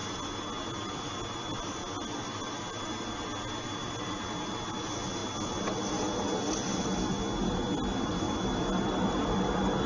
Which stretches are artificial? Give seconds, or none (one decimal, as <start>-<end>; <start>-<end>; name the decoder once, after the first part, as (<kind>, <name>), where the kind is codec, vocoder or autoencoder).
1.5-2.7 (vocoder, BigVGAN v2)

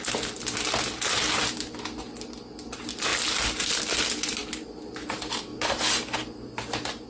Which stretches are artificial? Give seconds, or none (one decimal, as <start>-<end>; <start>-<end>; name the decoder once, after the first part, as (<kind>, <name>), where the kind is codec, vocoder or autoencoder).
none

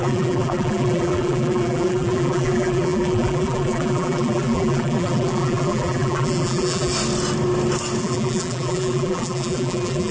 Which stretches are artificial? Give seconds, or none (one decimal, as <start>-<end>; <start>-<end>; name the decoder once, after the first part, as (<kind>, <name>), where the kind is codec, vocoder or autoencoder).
0.0-6.9 (vocoder, BigVGAN v2); 8.0-10.1